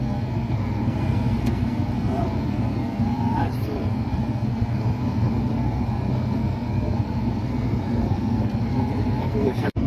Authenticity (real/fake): fake